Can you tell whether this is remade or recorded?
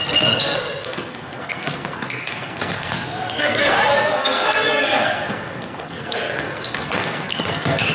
remade